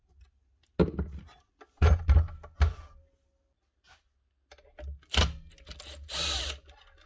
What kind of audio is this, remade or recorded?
recorded